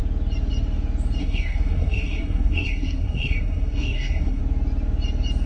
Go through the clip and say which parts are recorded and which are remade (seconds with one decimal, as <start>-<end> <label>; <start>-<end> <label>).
0.0-1.2 recorded; 1.2-4.4 remade; 4.4-5.5 recorded